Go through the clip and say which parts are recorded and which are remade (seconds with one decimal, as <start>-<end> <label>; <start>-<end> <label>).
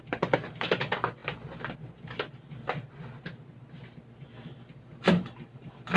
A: 0.0-1.2 remade; 1.2-4.8 recorded; 4.8-6.0 remade